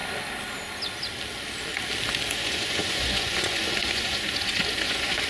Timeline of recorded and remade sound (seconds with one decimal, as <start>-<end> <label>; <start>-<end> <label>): 0.0-2.3 recorded; 2.3-5.3 remade